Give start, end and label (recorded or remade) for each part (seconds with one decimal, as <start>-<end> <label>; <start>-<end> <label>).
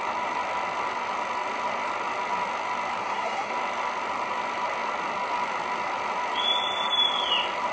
0.0-3.0 recorded; 3.0-3.5 remade; 3.5-7.7 recorded